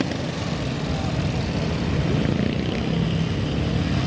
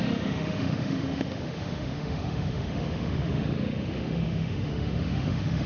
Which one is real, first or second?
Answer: first